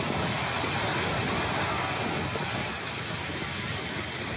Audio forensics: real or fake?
real